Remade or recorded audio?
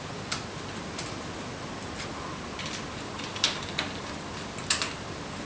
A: recorded